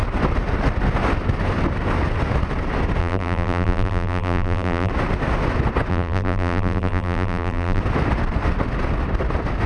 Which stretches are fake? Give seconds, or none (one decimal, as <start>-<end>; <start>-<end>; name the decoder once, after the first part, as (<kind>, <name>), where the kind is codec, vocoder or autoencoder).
3.0-4.9 (vocoder, BigVGAN v2); 5.9-7.8